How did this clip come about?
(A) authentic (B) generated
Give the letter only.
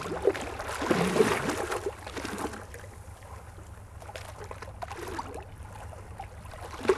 A